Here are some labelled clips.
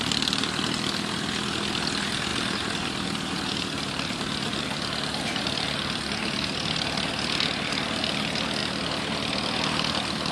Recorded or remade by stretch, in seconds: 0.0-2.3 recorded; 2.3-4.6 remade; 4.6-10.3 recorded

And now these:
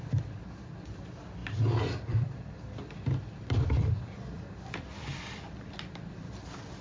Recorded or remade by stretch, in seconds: 0.0-6.8 remade

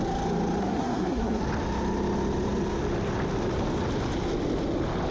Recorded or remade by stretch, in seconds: 0.0-0.6 recorded; 0.6-1.4 remade; 1.4-5.1 recorded

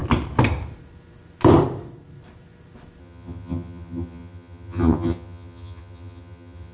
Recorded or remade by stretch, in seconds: 0.0-3.0 recorded; 3.0-6.7 remade

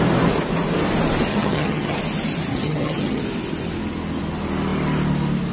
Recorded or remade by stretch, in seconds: 0.0-1.3 recorded; 1.3-2.0 remade; 2.0-2.5 recorded; 2.5-3.2 remade; 3.2-5.5 recorded

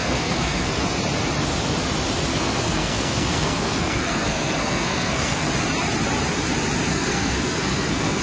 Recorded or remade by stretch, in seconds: 0.0-0.7 remade; 0.7-2.3 recorded; 2.3-5.5 remade; 5.5-6.9 recorded; 6.9-8.2 remade

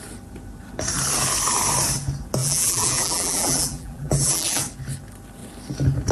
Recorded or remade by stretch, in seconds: 0.0-2.4 recorded; 2.4-4.6 remade; 4.6-6.1 recorded

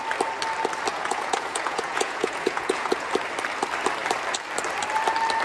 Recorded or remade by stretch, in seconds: 0.0-0.9 recorded; 0.9-3.1 remade; 3.1-5.4 recorded